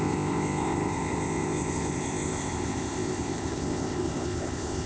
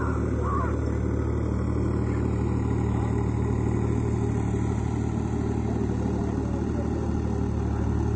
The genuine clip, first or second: second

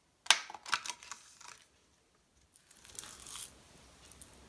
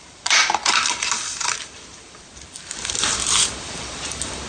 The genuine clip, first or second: first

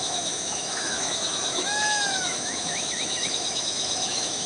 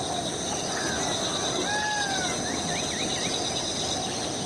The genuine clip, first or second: second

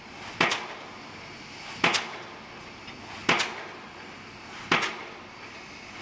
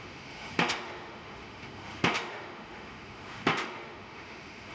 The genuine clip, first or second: first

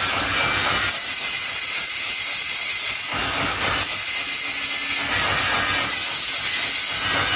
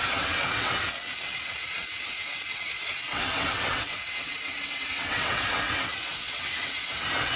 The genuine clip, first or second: first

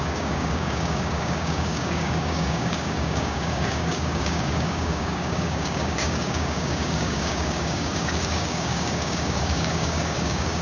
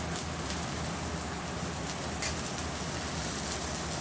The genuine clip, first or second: second